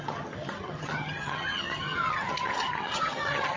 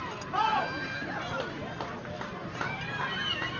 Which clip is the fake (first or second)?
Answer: first